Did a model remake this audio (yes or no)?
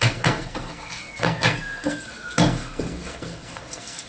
yes